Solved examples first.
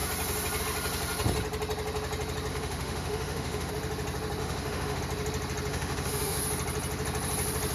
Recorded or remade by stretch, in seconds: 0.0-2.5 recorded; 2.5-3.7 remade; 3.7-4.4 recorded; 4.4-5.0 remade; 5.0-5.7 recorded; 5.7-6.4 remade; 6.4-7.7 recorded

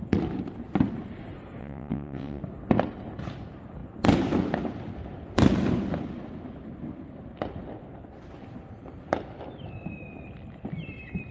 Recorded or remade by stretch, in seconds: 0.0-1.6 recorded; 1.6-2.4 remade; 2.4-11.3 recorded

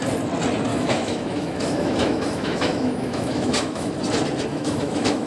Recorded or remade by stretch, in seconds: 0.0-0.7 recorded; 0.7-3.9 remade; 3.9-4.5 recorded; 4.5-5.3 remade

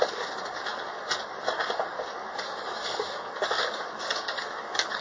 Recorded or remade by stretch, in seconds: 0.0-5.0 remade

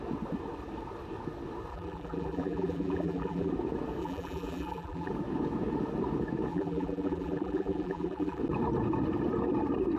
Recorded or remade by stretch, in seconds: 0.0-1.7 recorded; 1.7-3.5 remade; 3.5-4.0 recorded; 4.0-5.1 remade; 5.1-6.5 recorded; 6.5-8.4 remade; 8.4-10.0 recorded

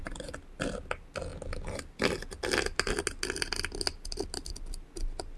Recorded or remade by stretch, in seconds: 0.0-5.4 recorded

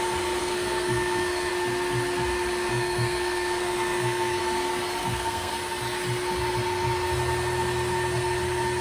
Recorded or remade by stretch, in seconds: 0.0-0.4 recorded; 0.4-1.5 remade; 1.5-2.7 recorded; 2.7-4.4 remade; 4.4-5.0 recorded; 5.0-5.5 remade; 5.5-8.8 recorded